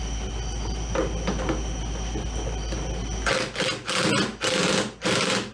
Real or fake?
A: real